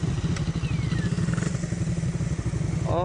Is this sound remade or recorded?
recorded